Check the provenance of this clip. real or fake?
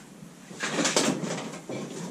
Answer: fake